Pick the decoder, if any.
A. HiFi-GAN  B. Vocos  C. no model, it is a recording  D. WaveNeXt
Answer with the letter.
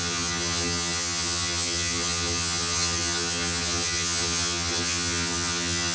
A